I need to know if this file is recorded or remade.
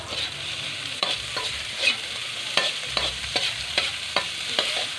remade